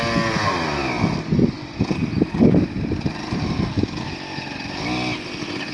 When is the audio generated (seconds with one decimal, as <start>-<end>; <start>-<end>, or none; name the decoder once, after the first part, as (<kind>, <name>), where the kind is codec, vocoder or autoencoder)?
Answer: none